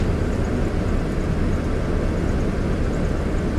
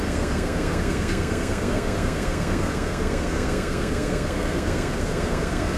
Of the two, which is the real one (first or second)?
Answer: first